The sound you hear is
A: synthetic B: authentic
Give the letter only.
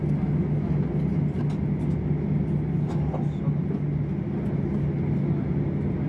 B